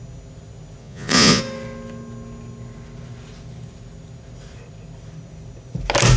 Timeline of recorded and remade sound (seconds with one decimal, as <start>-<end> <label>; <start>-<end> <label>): 0.0-0.8 recorded; 0.8-1.4 remade; 1.4-6.2 recorded